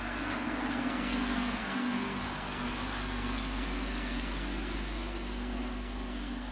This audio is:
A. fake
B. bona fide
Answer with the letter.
A